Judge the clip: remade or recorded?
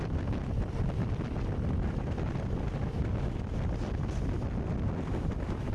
recorded